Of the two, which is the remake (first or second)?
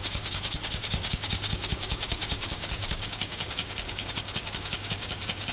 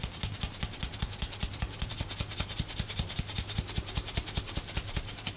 first